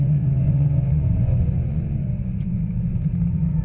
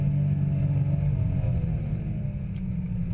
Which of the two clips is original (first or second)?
second